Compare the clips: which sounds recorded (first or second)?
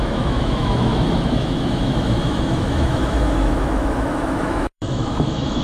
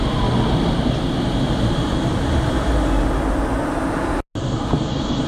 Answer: second